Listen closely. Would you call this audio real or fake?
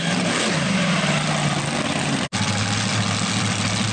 real